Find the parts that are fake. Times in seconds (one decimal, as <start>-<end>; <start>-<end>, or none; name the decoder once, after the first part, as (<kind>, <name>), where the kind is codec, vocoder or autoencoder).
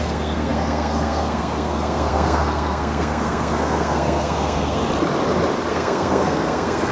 0.0-4.8 (codec, SNAC); 5.7-6.9